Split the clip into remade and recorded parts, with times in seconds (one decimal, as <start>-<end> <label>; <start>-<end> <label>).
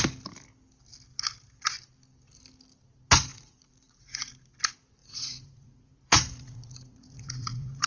0.0-3.3 recorded; 3.3-4.3 remade; 4.3-5.0 recorded; 5.0-7.9 remade